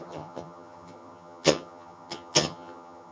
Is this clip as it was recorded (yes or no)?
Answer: no